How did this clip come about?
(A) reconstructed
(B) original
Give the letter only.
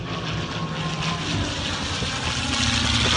B